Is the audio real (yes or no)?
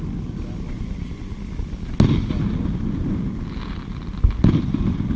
yes